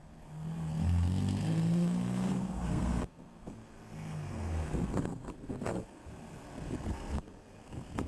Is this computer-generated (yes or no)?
yes